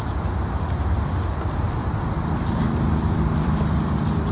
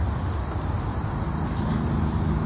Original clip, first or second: second